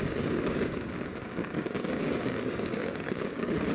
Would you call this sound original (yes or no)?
no